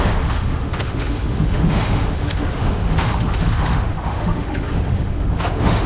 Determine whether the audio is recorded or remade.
remade